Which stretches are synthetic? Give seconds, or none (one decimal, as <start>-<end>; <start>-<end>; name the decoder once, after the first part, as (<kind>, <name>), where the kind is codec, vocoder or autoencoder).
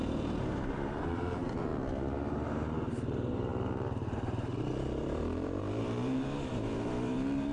0.0-1.7 (vocoder, BigVGAN v2); 2.3-7.5